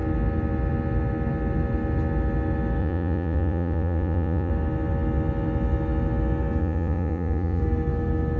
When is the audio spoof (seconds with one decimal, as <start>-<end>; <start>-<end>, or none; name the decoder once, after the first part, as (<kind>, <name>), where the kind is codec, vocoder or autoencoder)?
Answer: 2.8-4.5 (vocoder, Vocos); 6.6-7.6